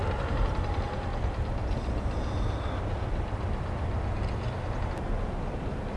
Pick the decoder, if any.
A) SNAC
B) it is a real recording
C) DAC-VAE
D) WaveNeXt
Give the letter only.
B